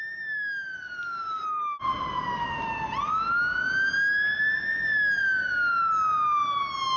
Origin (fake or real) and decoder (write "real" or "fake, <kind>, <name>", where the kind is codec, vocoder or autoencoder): real